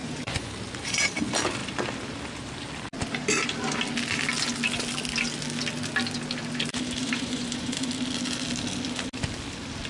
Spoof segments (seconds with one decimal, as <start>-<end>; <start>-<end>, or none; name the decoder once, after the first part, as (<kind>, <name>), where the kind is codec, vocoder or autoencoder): 0.0-0.5 (vocoder, Vocos); 7.0-7.9